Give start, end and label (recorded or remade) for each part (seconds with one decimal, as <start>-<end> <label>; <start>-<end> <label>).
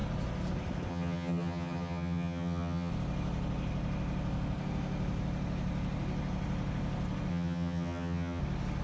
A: 0.0-0.9 recorded; 0.9-2.9 remade; 2.9-7.3 recorded; 7.3-8.4 remade; 8.4-8.8 recorded